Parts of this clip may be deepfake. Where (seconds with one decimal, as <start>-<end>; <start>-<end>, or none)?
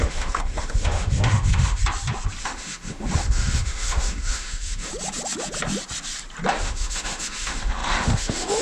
0.0-1.8; 2.4-4.9; 6.6-8.6